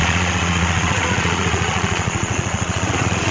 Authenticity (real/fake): fake